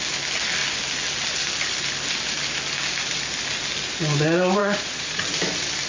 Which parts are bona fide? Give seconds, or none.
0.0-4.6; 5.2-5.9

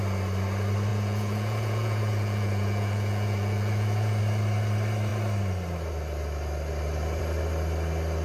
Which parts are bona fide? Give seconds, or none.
0.0-0.9; 4.2-8.2

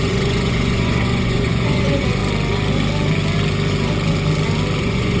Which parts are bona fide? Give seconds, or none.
2.2-4.8

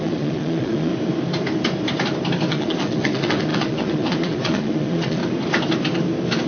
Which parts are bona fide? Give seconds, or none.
0.9-2.5; 5.2-6.5

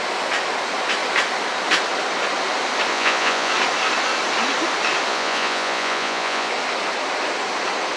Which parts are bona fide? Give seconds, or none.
0.0-2.9; 3.5-5.1; 6.5-8.0